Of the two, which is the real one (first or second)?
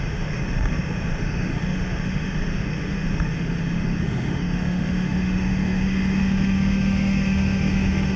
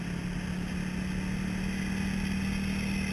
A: second